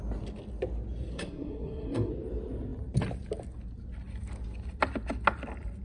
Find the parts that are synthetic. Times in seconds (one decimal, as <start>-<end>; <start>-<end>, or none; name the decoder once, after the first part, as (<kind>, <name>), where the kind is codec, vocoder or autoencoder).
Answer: 1.1-2.1 (codec, SNAC)